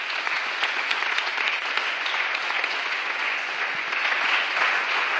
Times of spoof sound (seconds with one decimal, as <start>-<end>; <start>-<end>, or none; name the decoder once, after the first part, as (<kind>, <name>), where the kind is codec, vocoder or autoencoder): 0.0-5.2 (vocoder, Vocos)